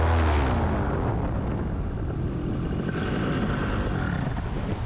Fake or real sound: real